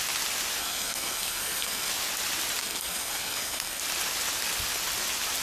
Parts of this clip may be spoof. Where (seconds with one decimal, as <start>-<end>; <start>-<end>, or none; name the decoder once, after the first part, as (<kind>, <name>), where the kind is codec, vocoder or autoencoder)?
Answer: 0.6-1.9 (codec, SNAC); 2.6-3.8

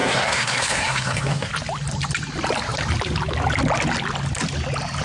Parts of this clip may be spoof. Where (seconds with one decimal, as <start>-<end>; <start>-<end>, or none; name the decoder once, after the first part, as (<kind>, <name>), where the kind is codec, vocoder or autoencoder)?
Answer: 0.0-1.5 (codec, SNAC)

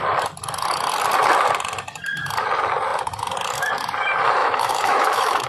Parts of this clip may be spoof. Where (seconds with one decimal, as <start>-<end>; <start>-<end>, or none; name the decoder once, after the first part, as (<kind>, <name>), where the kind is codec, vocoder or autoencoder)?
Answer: 4.4-5.5 (autoencoder, DAC-VAE)

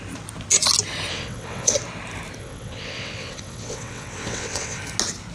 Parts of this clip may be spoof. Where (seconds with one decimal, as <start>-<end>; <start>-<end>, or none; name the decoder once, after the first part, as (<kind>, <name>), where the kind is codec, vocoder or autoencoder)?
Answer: 1.1-1.7 (vocoder, WaveNeXt); 2.4-4.8

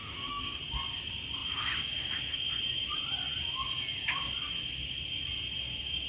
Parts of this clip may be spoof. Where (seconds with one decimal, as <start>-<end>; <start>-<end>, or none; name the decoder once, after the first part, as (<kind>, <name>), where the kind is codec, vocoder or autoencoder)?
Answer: 0.0-0.6 (autoencoder, DAC-VAE)

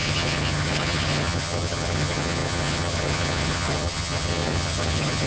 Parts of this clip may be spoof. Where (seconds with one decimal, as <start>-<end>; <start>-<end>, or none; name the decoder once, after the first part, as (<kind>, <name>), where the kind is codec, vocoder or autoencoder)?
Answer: 0.0-5.3 (vocoder, HiFi-GAN)

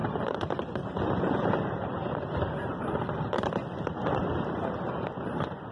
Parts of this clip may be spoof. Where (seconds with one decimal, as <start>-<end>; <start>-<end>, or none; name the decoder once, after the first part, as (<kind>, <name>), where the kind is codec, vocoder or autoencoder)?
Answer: 0.0-4.2 (vocoder, BigVGAN v2)